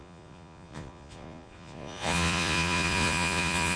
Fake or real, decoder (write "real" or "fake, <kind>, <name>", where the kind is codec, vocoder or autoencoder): fake, vocoder, Vocos